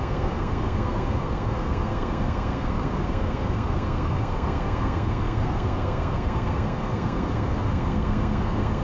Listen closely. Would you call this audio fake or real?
fake